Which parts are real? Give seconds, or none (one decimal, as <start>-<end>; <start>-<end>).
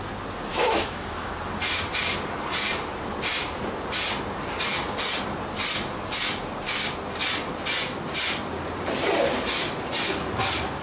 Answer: 0.0-0.5; 1.3-10.8